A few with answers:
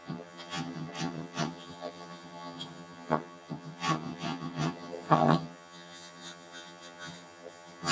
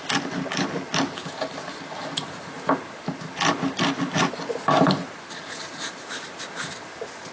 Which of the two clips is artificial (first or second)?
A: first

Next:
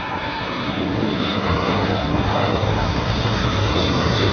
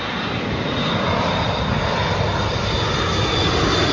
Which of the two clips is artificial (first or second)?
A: first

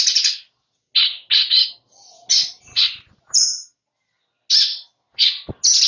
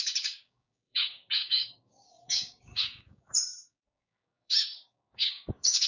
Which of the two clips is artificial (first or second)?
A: second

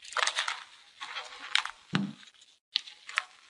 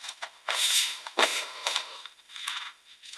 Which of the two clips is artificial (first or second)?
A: second